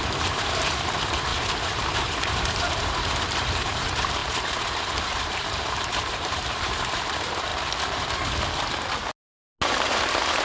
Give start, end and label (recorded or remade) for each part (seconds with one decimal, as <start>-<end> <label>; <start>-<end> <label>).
0.0-7.5 remade; 7.5-9.7 recorded; 9.7-10.4 remade